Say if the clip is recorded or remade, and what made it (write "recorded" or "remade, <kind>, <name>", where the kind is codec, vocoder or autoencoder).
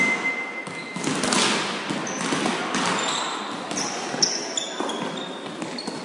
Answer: recorded